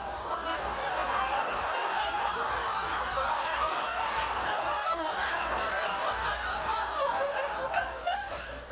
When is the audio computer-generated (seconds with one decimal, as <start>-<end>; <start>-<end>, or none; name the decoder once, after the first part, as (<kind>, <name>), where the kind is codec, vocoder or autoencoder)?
0.0-8.7 (codec, DAC)